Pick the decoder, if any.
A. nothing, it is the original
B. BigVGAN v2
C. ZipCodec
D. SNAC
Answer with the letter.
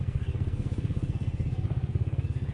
D